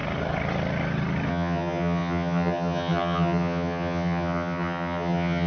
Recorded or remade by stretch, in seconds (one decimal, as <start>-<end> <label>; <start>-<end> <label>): 0.0-1.3 recorded; 1.3-5.5 remade